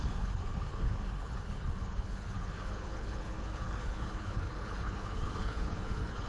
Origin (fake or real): fake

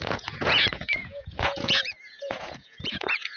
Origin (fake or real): fake